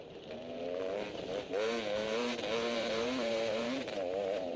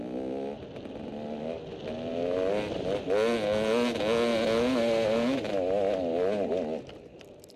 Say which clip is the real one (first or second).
second